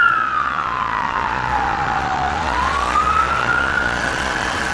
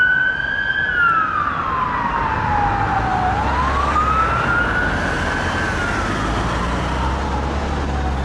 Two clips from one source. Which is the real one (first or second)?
second